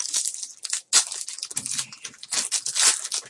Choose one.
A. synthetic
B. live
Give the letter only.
B